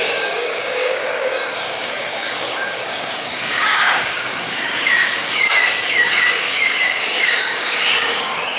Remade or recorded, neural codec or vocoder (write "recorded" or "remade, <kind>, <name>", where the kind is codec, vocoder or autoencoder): remade, codec, DAC